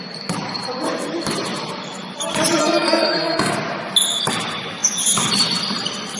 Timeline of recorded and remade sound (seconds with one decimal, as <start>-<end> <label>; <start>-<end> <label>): 0.0-2.6 recorded; 2.6-3.5 remade; 3.5-6.2 recorded